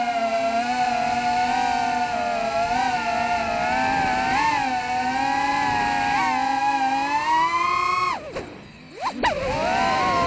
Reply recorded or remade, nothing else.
recorded